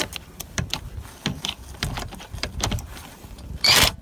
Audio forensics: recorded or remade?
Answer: remade